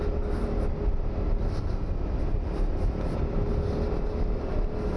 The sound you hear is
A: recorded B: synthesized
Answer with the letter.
A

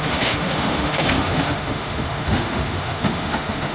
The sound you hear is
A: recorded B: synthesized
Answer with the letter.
B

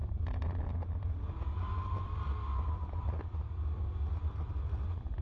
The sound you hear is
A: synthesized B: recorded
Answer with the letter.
A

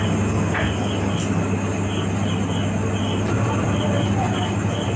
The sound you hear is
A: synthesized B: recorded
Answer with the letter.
B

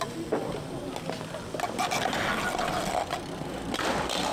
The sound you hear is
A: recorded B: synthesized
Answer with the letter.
B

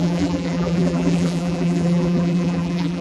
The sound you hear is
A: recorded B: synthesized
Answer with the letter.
B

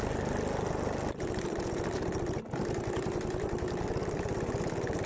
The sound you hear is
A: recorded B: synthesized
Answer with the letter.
A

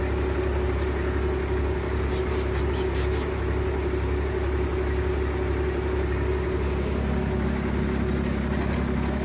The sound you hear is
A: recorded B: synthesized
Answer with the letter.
A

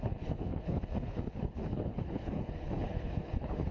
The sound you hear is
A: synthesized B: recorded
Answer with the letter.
A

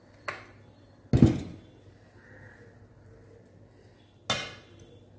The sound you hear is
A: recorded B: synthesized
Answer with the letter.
A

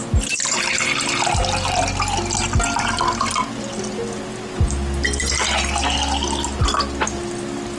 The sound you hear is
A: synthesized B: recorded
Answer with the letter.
B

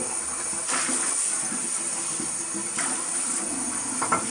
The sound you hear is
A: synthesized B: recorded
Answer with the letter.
B